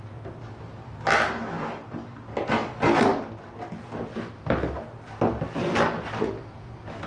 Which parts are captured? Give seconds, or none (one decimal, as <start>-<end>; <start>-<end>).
0.0-7.1